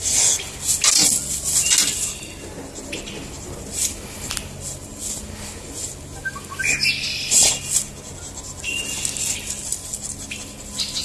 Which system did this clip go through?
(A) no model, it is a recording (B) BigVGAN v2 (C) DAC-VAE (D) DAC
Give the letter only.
A